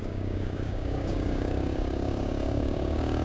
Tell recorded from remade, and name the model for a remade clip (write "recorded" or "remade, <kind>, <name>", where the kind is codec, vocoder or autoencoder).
remade, codec, DAC